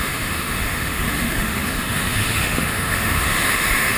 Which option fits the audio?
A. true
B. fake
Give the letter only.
B